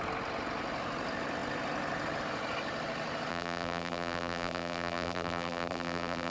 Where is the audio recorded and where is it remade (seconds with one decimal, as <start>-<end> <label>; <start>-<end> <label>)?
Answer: 0.0-3.3 recorded; 3.3-6.3 remade